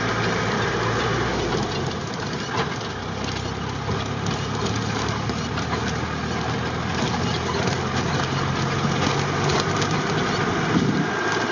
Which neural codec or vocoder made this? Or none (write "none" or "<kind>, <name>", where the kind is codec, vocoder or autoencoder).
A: none